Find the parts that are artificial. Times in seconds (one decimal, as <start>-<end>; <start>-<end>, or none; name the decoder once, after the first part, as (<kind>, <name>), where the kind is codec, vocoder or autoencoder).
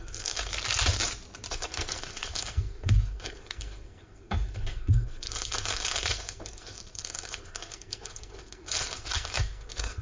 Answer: 0.0-0.5 (codec, SNAC); 1.5-10.0